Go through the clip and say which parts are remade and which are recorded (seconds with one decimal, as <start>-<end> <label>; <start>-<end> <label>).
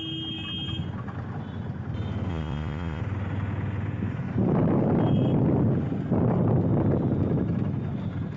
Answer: 0.0-2.3 recorded; 2.3-3.0 remade; 3.0-8.4 recorded